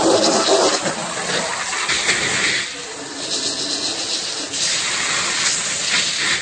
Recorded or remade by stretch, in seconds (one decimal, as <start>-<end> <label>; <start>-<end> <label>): 0.0-6.4 recorded